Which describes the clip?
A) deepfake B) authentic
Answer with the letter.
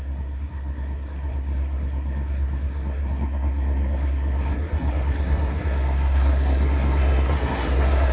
A